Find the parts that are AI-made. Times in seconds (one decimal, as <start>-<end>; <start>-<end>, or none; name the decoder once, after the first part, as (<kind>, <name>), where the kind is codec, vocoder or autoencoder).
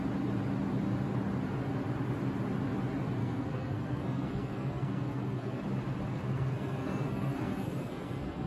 3.2-5.6 (codec, SNAC); 6.1-8.5